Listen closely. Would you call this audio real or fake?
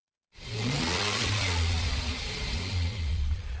fake